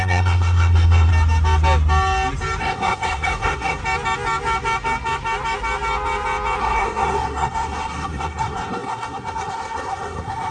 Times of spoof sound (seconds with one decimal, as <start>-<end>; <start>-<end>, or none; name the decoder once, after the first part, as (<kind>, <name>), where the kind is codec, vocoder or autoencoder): 0.0-1.1 (codec, SNAC); 2.6-3.8; 6.6-10.5